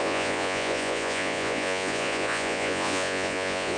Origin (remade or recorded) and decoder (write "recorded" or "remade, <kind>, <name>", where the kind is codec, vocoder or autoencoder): remade, vocoder, Vocos